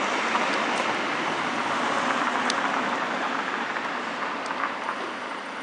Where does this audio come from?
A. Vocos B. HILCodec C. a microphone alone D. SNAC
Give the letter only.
C